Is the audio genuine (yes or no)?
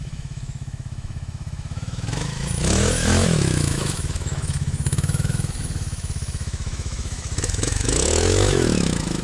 no